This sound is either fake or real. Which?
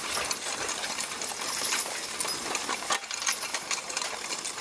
real